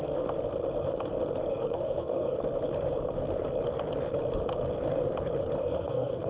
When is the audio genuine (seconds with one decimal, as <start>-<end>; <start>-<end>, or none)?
0.0-1.5; 2.4-5.6